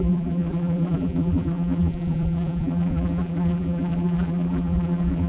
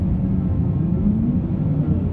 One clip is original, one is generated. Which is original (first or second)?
second